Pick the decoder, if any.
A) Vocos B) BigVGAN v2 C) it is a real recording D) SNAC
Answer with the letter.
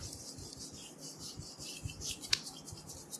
C